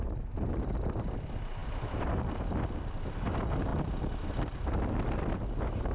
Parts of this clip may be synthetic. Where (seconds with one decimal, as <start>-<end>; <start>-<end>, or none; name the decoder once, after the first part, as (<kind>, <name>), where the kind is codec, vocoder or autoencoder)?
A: none